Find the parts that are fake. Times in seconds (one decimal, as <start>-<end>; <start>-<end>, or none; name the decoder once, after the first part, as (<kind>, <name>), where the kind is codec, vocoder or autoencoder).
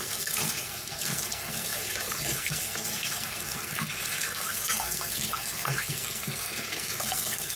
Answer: 0.0-7.6 (codec, SNAC)